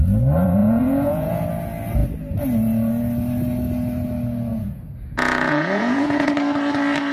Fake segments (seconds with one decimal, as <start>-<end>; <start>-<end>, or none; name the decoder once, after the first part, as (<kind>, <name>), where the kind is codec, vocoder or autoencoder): 0.6-1.4 (vocoder, Vocos); 4.5-6.3